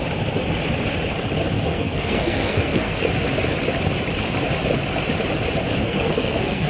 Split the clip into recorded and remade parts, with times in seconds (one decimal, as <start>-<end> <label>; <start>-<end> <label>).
0.0-1.7 recorded; 1.7-3.0 remade; 3.0-5.8 recorded; 5.8-6.7 remade